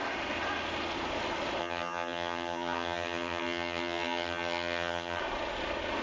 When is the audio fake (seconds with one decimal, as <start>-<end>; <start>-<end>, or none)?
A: 1.6-5.2